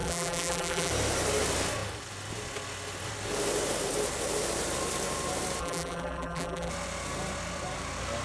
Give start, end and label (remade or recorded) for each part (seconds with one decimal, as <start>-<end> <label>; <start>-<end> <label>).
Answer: 0.0-0.9 remade; 0.9-5.6 recorded; 5.6-6.7 remade; 6.7-8.2 recorded